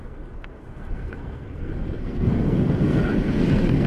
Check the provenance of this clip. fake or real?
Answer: fake